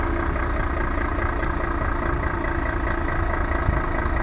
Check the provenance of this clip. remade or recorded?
recorded